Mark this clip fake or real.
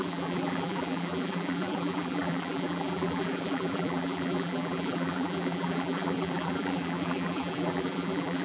fake